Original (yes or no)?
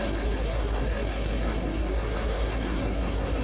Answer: no